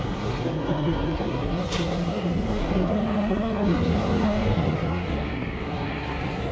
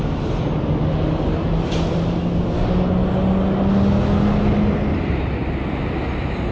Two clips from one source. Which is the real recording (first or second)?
second